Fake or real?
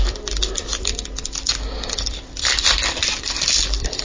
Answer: fake